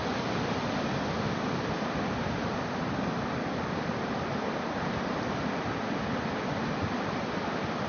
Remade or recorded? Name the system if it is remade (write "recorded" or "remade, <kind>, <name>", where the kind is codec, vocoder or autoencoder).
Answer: recorded